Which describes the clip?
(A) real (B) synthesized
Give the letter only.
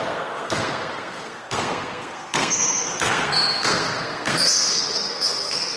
B